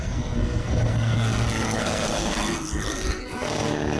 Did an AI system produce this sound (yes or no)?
yes